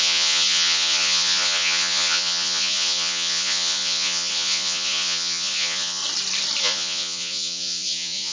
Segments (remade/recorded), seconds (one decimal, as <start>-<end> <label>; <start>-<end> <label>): 0.0-6.0 remade; 6.0-6.6 recorded; 6.6-8.3 remade